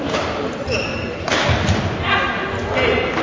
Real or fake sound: real